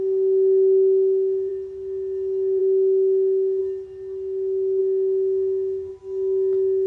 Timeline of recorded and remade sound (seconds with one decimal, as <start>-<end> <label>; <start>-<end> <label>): 0.0-1.5 remade; 1.5-2.6 recorded; 2.6-3.6 remade; 3.6-4.8 recorded; 4.8-5.9 remade; 5.9-6.9 recorded